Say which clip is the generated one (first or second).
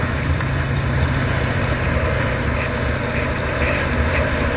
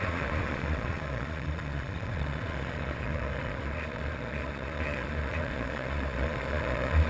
second